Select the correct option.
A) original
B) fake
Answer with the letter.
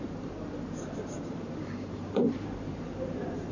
B